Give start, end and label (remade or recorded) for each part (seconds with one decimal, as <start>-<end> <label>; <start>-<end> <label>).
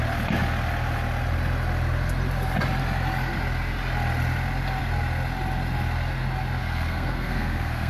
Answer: 0.0-6.6 recorded; 6.6-7.9 remade